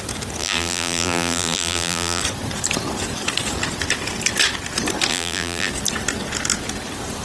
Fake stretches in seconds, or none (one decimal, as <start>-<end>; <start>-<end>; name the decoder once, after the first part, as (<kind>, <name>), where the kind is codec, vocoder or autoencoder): 0.4-2.2 (vocoder, BigVGAN v2); 5.1-5.7